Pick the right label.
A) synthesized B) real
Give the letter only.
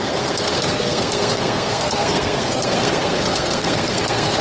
A